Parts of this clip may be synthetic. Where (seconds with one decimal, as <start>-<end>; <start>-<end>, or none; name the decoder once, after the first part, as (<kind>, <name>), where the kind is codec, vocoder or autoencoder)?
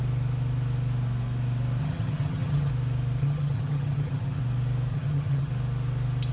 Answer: 1.8-2.7 (vocoder, HiFi-GAN); 3.2-4.4; 4.9-5.5